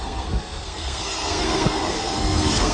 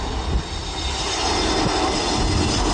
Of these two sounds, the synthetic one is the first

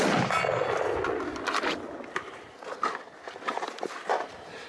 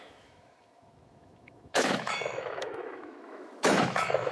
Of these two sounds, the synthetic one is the second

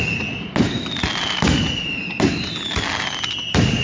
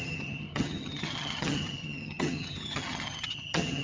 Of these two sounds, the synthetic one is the second